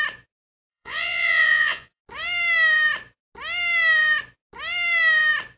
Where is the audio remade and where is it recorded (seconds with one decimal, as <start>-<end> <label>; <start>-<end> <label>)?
0.0-0.7 recorded; 0.7-2.0 remade; 2.0-5.6 recorded